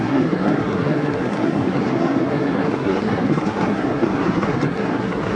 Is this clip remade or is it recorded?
remade